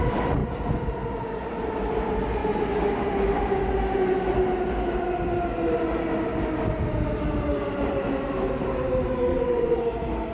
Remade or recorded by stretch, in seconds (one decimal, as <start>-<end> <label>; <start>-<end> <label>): 0.0-9.3 recorded; 9.3-9.8 remade; 9.8-10.3 recorded